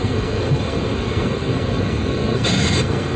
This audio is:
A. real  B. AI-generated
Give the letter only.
B